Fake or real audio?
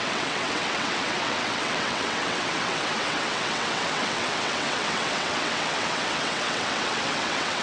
fake